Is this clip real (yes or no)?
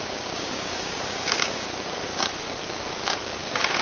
no